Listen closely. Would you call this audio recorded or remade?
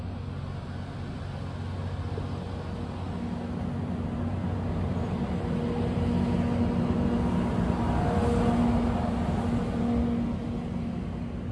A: recorded